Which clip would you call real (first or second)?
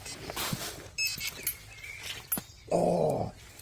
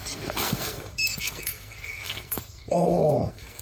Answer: first